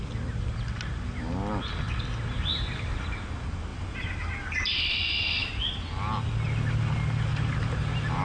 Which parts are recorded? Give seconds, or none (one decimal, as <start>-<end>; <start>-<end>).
0.0-3.7; 4.2-5.4; 5.9-7.3